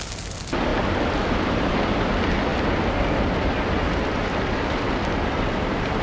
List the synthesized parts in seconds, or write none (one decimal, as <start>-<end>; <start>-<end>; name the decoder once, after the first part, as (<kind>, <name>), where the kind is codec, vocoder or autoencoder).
none